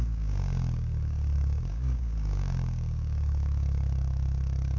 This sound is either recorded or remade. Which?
remade